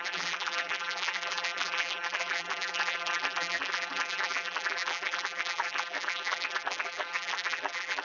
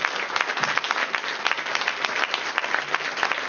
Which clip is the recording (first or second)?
second